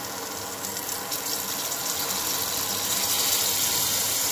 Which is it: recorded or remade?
recorded